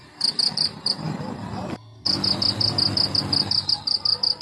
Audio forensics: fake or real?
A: real